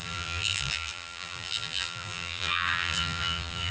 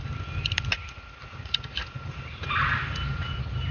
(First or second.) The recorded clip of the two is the second